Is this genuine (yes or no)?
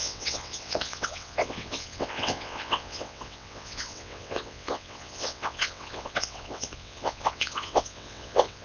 no